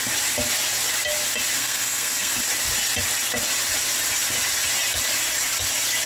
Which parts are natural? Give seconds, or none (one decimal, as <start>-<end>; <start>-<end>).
0.0-1.6; 2.3-6.1